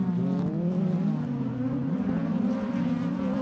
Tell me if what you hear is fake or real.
real